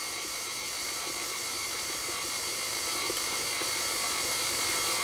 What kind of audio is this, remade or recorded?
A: remade